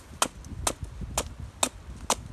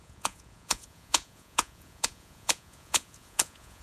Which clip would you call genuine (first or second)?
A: first